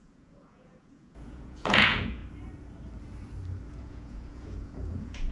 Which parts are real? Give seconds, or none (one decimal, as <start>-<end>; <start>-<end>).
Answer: 2.2-3.7